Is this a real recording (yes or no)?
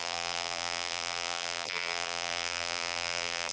no